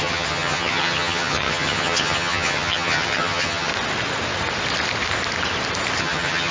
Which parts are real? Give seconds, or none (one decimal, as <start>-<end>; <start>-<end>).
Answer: 3.7-6.0